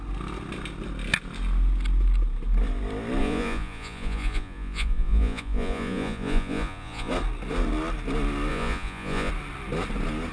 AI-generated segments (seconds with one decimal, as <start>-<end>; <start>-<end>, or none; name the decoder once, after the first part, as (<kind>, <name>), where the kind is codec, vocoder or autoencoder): 3.2-7.1 (vocoder, Vocos); 8.5-9.3